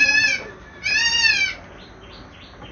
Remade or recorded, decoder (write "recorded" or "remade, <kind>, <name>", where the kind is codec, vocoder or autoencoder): recorded